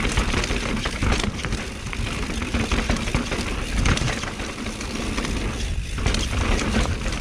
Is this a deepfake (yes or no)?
yes